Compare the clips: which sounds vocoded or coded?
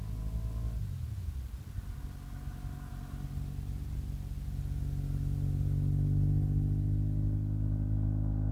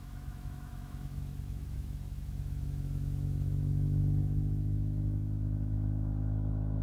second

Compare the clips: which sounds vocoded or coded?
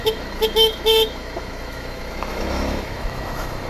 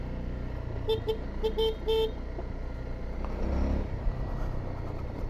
first